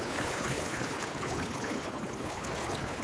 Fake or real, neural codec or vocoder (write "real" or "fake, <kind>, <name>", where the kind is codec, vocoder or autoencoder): fake, codec, HILCodec